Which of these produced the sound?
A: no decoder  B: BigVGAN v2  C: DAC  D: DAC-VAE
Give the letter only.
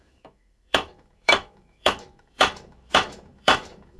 D